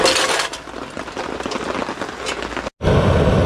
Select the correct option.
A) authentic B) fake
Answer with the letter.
A